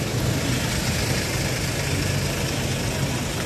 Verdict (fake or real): real